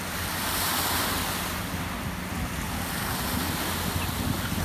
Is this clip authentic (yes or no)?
yes